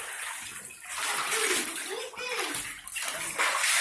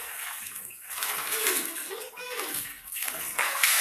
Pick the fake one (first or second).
second